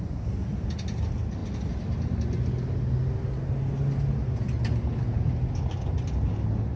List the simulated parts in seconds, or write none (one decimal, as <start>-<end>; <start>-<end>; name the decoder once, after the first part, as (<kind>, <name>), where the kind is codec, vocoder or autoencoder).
none